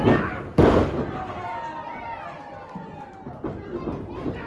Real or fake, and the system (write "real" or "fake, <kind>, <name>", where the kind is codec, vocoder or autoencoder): real